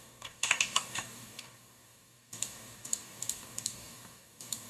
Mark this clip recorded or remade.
remade